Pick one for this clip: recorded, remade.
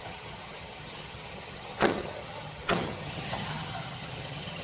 remade